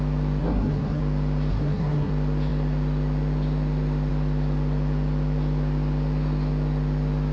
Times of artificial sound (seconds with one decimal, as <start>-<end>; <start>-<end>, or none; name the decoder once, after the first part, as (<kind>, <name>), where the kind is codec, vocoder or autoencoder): 0.4-1.0 (codec, SNAC); 1.5-2.1